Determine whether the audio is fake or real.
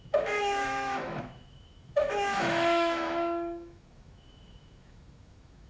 fake